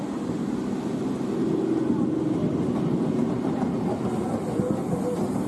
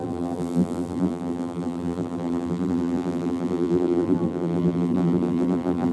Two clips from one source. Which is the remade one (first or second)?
second